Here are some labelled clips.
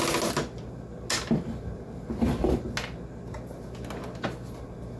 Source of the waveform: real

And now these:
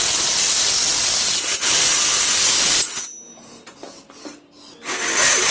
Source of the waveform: real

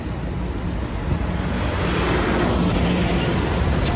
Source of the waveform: real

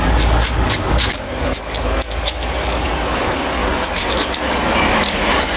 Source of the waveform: fake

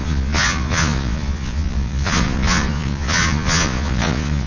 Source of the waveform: fake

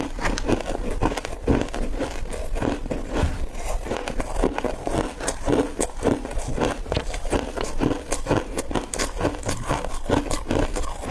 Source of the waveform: real